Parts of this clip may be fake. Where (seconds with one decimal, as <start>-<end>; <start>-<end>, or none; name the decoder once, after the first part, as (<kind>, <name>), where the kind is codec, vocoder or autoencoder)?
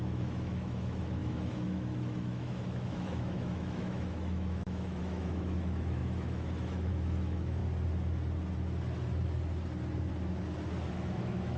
0.0-7.6 (autoencoder, DAC-VAE); 10.9-11.6